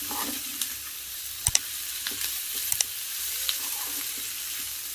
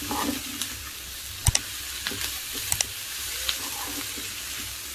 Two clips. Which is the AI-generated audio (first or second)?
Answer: first